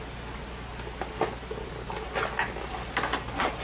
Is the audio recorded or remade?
recorded